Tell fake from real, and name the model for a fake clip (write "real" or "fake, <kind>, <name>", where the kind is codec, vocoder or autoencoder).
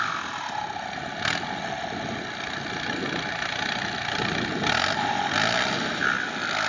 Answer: real